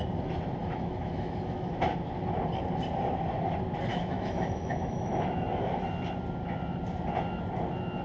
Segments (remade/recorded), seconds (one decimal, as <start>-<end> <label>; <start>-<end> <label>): 0.0-0.6 recorded; 0.6-1.7 remade; 1.7-3.9 recorded; 3.9-5.7 remade; 5.7-8.0 recorded